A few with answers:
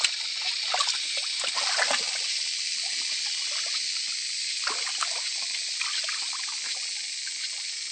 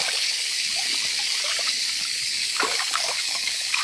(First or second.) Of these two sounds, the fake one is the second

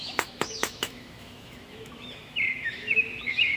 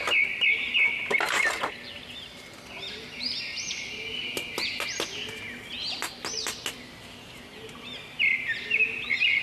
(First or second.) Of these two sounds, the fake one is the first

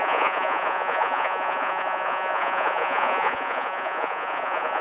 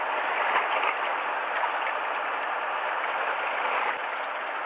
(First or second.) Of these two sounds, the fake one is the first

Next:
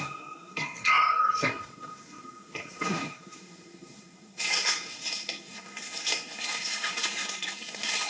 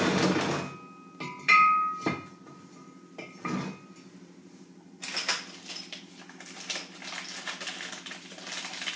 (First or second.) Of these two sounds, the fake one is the first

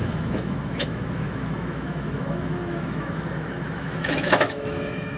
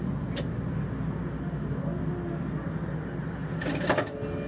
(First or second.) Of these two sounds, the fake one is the first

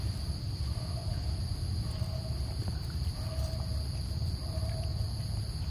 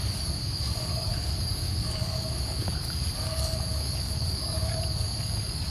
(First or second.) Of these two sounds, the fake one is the second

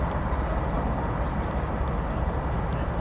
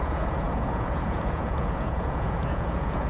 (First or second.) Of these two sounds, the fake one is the second